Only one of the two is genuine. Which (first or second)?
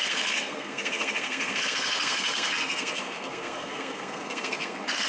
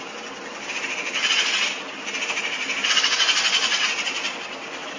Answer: second